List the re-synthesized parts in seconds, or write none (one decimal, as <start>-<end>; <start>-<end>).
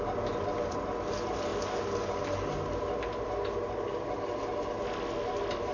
none